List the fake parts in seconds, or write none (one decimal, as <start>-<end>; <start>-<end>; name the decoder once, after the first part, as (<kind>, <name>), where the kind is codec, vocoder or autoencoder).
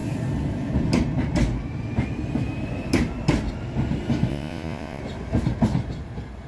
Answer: 4.3-5.0 (vocoder, Vocos)